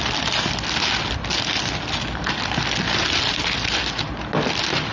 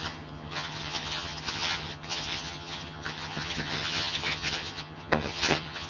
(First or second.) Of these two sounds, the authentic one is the first